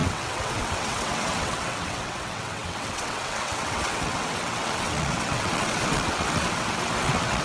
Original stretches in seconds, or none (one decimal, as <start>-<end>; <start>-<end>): none